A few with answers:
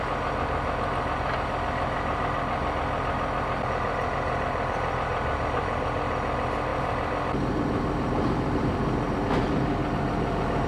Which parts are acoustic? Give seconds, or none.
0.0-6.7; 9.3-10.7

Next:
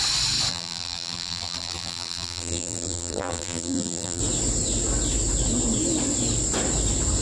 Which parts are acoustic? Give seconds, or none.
0.0-0.5; 4.2-7.2

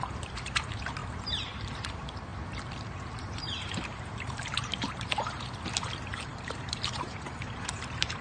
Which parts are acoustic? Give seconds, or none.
2.3-3.2

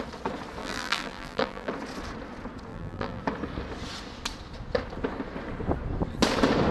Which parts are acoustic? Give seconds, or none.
0.0-0.6; 1.7-2.7; 3.2-6.7

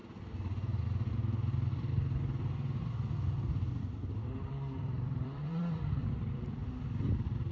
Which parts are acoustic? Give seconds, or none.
0.0-4.5; 6.6-7.5

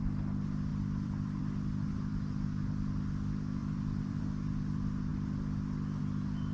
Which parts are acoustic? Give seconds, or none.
0.0-0.7; 1.4-3.6; 4.2-6.5

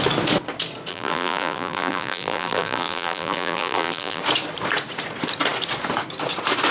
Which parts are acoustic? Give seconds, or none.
0.0-0.9; 4.2-6.7